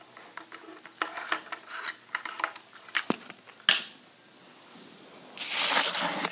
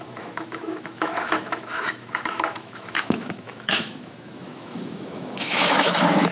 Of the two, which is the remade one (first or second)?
second